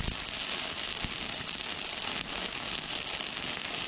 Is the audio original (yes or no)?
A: yes